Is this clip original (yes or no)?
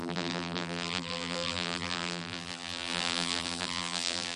no